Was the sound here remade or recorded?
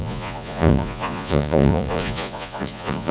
remade